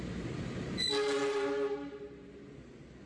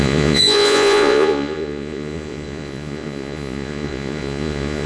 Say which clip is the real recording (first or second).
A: first